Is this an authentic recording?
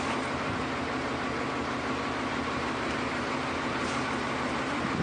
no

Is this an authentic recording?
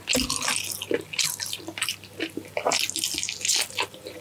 yes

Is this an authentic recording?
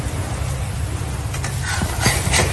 yes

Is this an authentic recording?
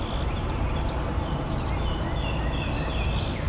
yes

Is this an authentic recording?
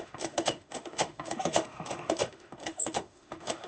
no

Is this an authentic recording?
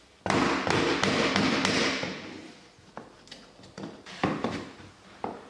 yes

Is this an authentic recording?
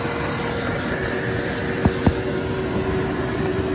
yes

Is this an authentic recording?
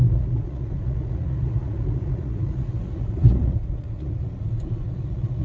no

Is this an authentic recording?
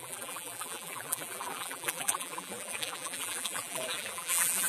no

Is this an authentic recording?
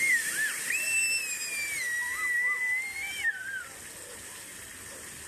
yes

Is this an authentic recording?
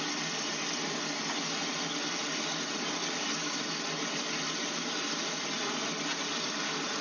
yes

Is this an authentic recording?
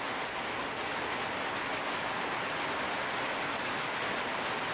yes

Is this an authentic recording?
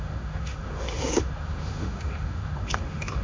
no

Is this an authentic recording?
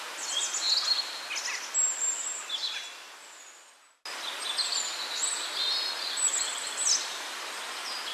yes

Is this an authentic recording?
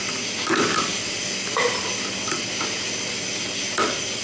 yes